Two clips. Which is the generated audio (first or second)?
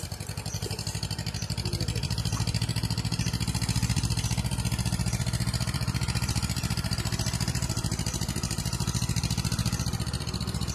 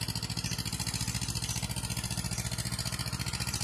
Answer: first